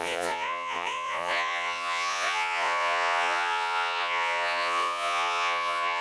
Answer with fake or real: fake